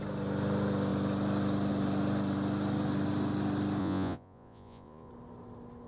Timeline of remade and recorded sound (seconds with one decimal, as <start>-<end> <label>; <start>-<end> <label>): 0.0-3.8 recorded; 3.8-5.1 remade; 5.1-5.9 recorded